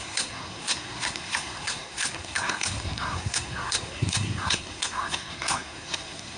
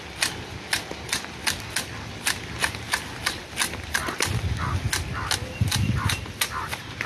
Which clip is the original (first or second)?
second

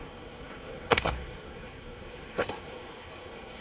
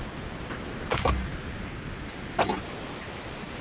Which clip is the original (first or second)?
second